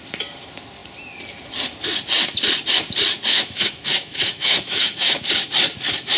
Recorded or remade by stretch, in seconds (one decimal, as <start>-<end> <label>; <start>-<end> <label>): 0.0-3.3 recorded; 3.3-5.2 remade; 5.2-6.2 recorded